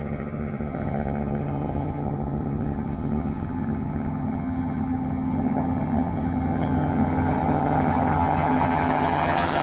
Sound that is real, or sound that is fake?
fake